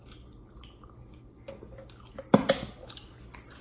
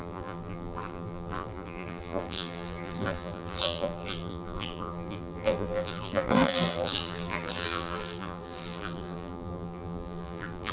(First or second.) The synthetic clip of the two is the second